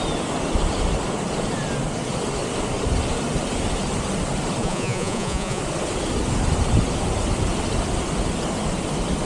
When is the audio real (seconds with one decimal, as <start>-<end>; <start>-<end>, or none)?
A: 0.0-4.6; 5.6-9.3